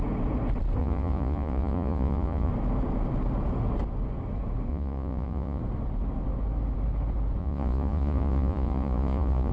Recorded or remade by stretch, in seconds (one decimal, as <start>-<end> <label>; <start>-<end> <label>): 0.0-0.8 recorded; 0.8-2.5 remade; 2.5-4.7 recorded; 4.7-5.6 remade; 5.6-7.4 recorded; 7.4-9.5 remade